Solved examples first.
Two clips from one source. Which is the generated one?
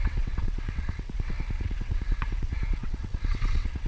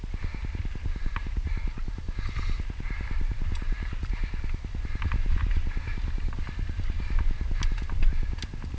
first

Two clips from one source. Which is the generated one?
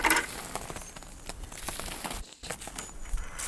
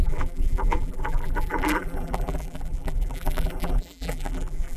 second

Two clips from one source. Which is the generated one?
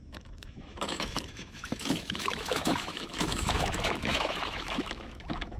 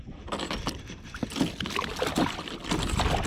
first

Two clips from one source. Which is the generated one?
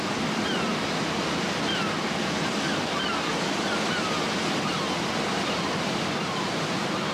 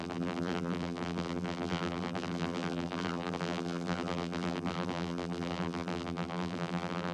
second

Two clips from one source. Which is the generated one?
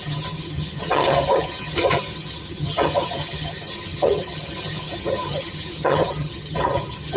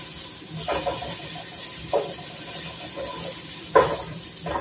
first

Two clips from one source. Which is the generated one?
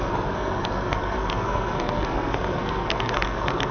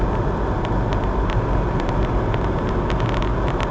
first